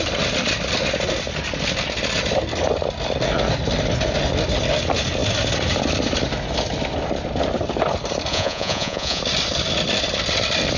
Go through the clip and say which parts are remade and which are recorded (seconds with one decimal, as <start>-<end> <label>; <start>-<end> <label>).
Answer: 0.0-8.3 recorded; 8.3-9.2 remade; 9.2-10.8 recorded